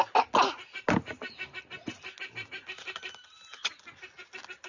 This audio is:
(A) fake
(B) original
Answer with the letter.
B